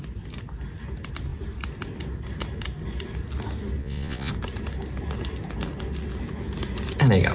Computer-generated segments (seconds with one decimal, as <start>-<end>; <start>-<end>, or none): 3.8-4.3